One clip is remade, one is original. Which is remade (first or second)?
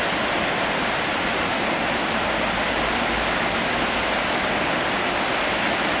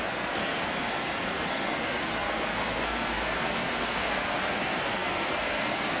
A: second